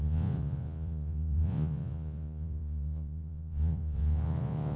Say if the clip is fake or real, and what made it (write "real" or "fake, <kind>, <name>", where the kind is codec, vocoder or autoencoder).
fake, vocoder, Vocos